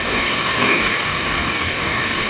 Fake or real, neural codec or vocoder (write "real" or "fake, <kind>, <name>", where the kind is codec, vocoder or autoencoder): fake, codec, DAC